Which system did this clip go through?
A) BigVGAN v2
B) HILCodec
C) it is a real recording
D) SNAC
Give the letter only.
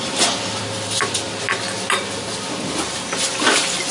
C